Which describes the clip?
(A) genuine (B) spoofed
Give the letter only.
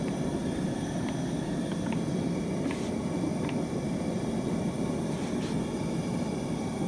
A